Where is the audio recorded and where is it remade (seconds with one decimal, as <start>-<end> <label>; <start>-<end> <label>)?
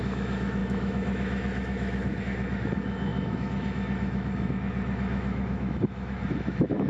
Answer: 0.0-6.9 remade